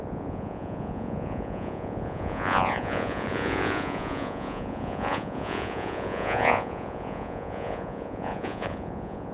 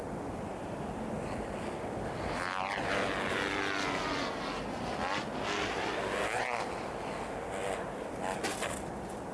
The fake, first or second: first